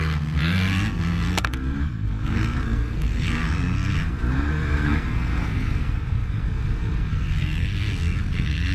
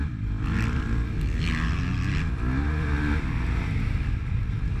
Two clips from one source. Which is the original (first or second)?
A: second